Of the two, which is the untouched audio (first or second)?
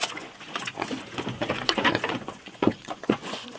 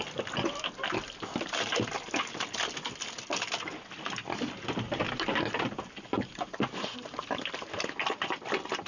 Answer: second